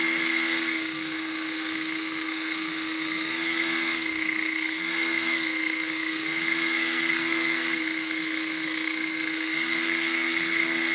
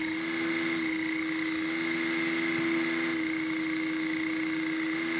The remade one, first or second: first